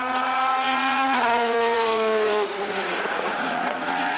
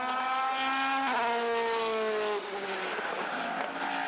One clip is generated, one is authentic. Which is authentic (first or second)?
second